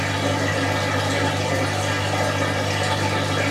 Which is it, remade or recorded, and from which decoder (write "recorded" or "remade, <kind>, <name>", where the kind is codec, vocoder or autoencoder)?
recorded